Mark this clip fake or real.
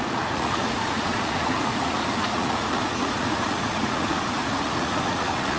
fake